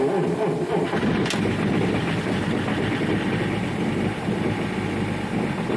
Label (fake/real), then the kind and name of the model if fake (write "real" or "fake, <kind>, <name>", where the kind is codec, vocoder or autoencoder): real